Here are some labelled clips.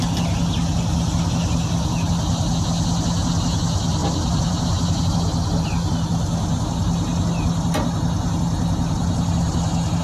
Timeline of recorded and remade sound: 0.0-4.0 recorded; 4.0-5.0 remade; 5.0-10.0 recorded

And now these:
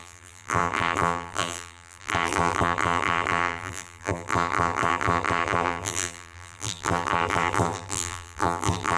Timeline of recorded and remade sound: 0.0-9.0 remade

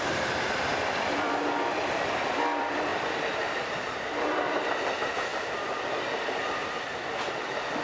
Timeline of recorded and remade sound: 0.0-7.8 remade